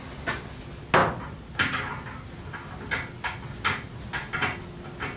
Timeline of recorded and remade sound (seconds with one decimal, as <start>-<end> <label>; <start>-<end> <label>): 0.0-5.2 recorded